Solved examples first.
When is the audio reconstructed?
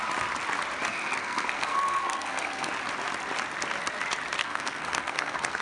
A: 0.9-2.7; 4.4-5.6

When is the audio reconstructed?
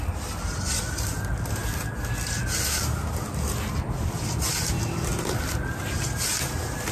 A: none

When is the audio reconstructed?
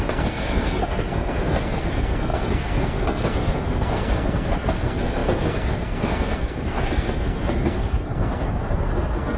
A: 0.0-9.4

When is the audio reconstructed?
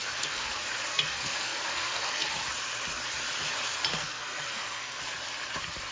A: 0.0-0.5; 0.9-2.3; 3.9-5.0